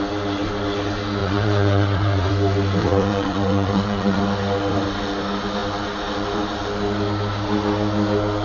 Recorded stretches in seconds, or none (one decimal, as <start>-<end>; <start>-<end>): 0.0-1.2; 2.3-2.8; 4.2-8.4